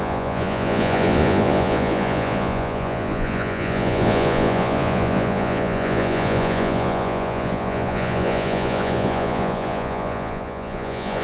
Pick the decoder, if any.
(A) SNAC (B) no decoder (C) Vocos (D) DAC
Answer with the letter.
C